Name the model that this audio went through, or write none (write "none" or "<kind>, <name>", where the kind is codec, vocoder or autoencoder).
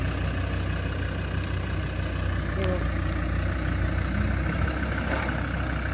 none